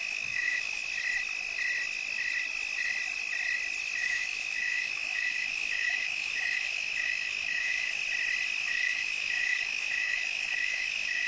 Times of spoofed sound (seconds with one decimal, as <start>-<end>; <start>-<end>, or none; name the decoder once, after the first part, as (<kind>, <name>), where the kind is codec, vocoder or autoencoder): 0.0-0.8 (autoencoder, DAC-VAE); 4.0-8.0; 8.6-11.3